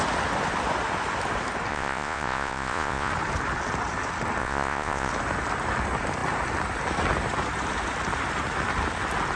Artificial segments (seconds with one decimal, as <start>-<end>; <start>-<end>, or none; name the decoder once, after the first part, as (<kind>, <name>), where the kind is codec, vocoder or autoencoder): 1.7-3.1 (vocoder, Vocos); 4.4-5.1